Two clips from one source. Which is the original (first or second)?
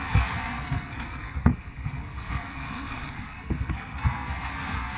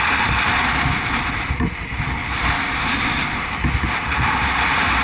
second